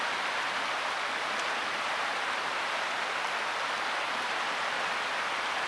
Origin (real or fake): real